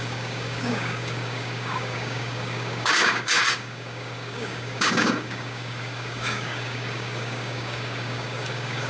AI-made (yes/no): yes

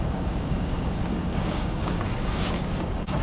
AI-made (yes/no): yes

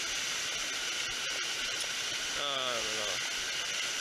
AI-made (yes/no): no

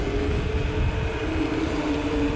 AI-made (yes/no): no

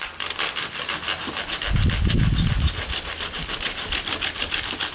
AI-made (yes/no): no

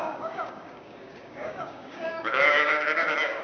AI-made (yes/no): yes